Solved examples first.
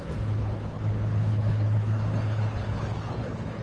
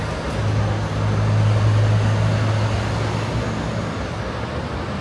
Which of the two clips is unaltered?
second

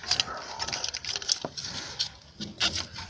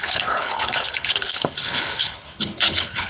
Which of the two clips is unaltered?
first